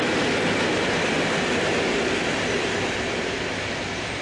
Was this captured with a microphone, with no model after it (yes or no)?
yes